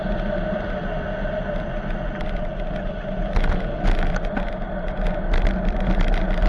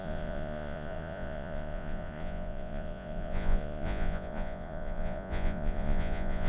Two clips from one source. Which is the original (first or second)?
first